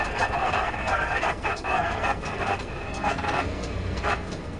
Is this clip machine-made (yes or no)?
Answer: yes